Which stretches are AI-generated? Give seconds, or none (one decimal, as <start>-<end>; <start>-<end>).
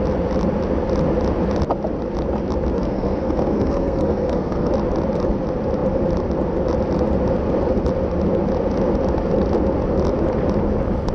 2.7-4.7